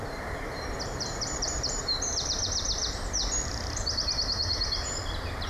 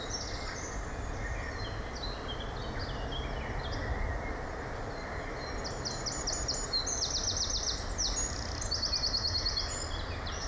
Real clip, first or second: second